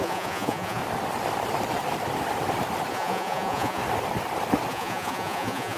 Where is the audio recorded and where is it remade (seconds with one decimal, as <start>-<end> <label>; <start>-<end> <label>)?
0.0-0.8 remade; 0.8-2.9 recorded; 2.9-3.8 remade; 3.8-4.7 recorded; 4.7-5.8 remade